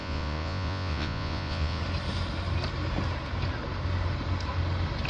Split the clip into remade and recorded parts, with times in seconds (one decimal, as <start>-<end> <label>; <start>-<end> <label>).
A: 0.0-1.8 remade; 1.8-5.1 recorded